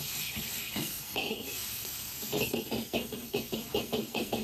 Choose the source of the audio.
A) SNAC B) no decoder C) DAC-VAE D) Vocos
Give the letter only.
A